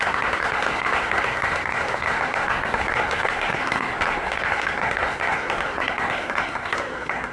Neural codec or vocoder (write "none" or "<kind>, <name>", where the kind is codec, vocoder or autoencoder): codec, SNAC